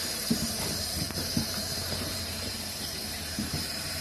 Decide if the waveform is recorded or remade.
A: remade